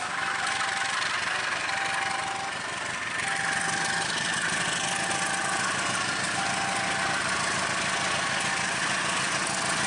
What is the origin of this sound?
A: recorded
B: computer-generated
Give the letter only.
A